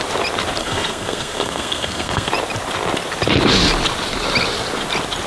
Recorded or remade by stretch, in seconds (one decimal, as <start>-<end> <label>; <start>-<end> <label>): 0.0-0.6 recorded; 0.6-2.3 remade; 2.3-5.3 recorded